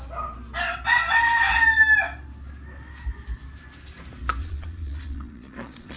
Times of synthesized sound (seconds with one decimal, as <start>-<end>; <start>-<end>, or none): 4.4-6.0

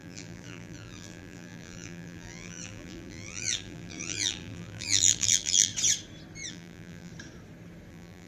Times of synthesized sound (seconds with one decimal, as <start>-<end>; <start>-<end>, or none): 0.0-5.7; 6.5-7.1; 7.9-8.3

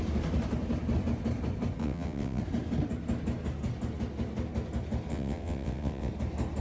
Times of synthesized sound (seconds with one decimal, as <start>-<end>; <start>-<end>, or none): 1.8-2.4; 5.1-6.1